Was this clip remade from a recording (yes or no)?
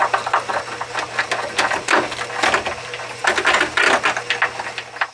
no